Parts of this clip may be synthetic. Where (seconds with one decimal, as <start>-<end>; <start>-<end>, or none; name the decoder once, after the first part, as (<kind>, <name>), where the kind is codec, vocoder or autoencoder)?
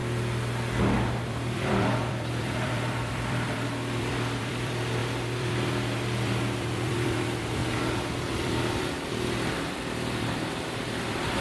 1.1-7.6 (vocoder, BigVGAN v2); 8.3-11.4